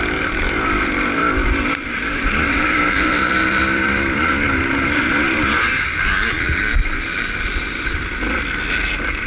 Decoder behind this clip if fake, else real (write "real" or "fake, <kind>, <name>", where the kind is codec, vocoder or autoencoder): fake, vocoder, BigVGAN v2